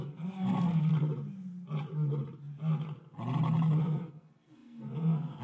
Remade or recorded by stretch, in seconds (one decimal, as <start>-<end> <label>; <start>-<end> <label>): 0.0-0.9 remade; 0.9-3.8 recorded; 3.8-5.4 remade